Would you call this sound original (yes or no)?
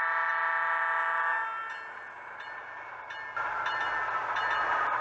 yes